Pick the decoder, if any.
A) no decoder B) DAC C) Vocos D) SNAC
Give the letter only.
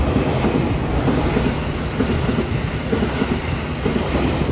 A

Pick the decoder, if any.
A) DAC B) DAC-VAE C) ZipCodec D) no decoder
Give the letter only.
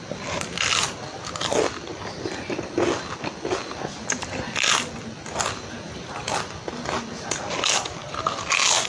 D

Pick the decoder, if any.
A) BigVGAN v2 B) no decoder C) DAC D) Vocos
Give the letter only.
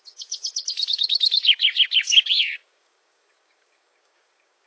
C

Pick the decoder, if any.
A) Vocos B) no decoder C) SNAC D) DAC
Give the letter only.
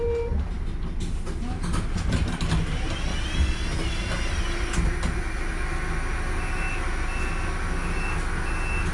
B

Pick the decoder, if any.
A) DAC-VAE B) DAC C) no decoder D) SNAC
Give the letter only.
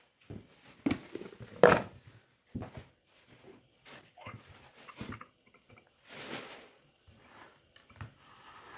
C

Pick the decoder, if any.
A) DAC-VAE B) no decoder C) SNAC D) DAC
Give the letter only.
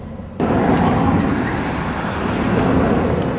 B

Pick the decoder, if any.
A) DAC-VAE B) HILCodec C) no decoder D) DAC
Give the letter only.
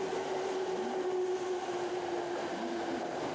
C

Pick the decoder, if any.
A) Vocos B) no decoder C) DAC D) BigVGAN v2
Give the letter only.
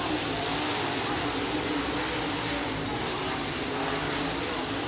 B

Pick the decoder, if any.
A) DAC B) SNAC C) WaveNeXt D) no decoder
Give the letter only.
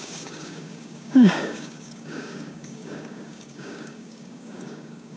A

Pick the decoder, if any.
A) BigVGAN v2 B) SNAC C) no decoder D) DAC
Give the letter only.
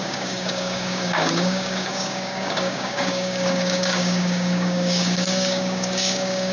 D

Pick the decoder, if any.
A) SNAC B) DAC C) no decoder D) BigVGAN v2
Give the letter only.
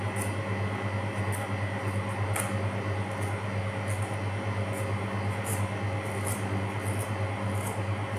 C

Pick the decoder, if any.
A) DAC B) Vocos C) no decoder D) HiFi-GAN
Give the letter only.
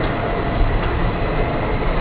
C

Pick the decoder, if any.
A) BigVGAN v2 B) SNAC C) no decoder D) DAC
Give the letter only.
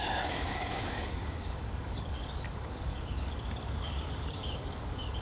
D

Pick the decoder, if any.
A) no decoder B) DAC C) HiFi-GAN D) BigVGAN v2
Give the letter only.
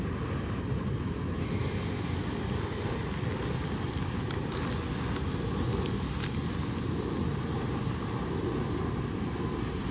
A